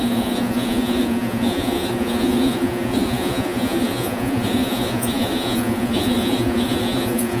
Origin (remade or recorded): remade